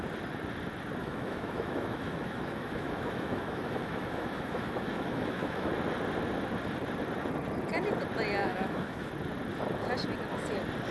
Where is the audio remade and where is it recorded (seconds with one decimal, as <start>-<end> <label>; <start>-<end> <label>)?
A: 0.0-1.0 recorded; 1.0-5.7 remade; 5.7-8.4 recorded; 8.4-9.1 remade; 9.1-10.9 recorded